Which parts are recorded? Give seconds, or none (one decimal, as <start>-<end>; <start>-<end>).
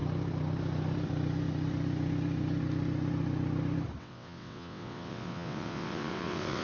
0.0-4.0